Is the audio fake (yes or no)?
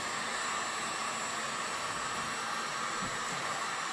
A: no